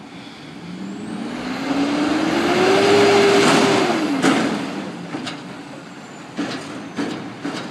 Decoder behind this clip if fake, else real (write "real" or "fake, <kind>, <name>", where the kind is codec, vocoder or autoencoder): real